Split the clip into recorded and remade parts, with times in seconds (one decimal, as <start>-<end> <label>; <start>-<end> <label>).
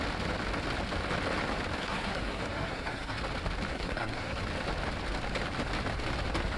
0.0-1.8 recorded; 1.8-3.2 remade; 3.2-3.7 recorded; 3.7-4.4 remade; 4.4-6.6 recorded